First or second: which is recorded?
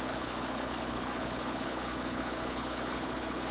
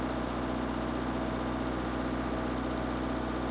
second